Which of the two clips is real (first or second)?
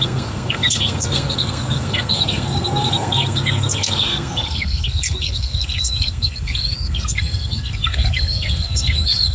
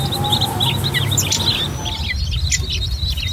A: second